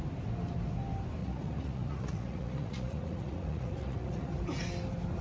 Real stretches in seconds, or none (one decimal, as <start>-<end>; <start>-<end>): 0.0-1.2; 4.3-5.2